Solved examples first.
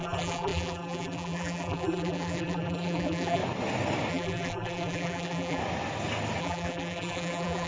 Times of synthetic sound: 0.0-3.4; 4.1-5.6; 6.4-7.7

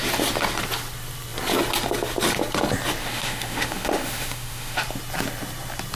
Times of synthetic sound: 3.0-4.8

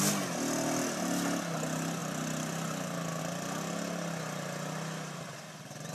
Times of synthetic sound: none

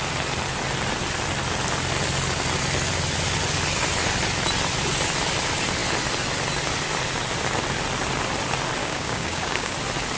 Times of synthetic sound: 8.8-9.7

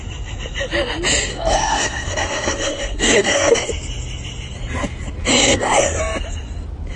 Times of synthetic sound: 1.3-3.7; 5.3-6.0